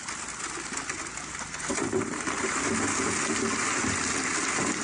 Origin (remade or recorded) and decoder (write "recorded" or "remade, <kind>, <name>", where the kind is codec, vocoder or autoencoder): recorded